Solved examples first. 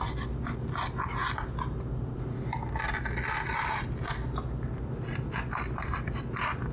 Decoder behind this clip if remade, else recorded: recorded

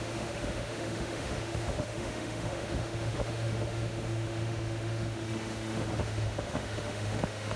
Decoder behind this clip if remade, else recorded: remade, autoencoder, DAC-VAE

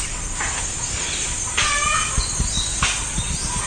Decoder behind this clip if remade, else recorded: recorded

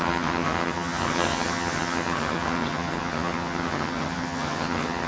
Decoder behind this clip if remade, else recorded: remade, vocoder, HiFi-GAN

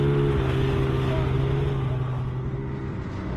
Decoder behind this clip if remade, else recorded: recorded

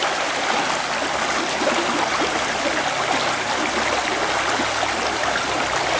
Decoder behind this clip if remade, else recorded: recorded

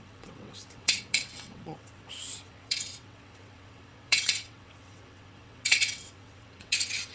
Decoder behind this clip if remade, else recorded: remade, vocoder, WaveNeXt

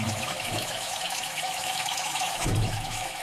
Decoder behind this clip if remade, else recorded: remade, autoencoder, DAC-VAE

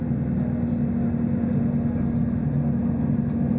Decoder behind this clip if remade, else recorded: recorded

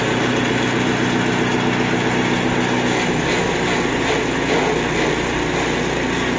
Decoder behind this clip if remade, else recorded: recorded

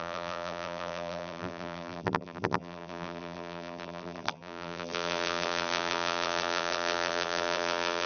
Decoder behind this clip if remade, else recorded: remade, vocoder, BigVGAN v2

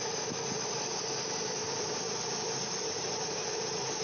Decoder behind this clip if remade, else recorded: remade, vocoder, BigVGAN v2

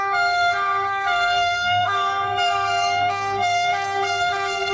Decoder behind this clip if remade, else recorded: remade, codec, SNAC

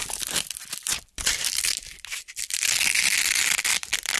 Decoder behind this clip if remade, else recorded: remade, vocoder, BigVGAN v2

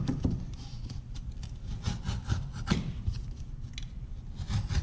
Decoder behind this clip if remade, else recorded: recorded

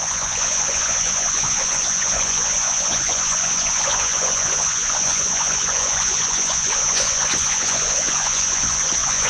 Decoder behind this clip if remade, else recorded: remade, vocoder, Vocos